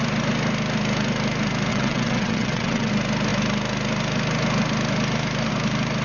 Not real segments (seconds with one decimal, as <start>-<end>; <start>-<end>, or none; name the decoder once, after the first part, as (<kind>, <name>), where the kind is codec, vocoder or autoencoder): 1.7-2.9 (vocoder, WaveNeXt)